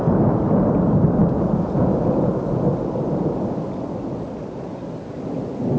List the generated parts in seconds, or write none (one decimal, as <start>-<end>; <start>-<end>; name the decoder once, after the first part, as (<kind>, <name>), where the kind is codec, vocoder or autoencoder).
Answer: none